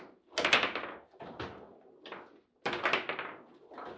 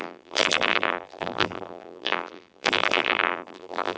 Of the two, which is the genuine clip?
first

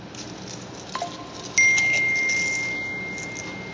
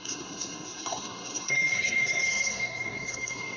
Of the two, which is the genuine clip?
first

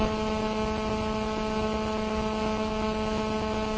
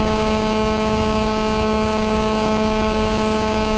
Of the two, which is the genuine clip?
first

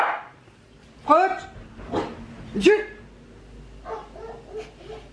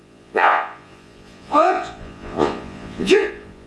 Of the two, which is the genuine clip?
first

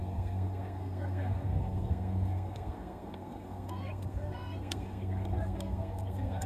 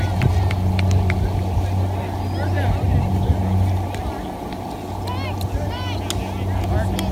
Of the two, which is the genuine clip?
second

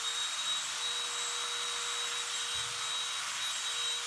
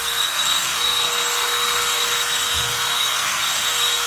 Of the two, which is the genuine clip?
first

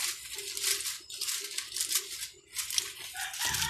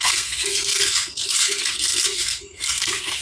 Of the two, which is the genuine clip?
first